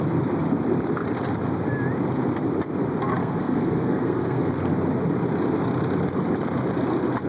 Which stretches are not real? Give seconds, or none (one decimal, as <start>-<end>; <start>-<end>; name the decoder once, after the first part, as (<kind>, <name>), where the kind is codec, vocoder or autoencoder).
3.2-4.5 (codec, SNAC)